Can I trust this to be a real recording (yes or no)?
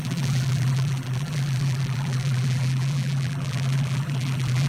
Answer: no